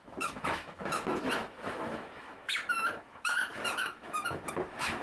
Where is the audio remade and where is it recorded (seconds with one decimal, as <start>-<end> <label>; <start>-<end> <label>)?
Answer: 0.0-5.0 remade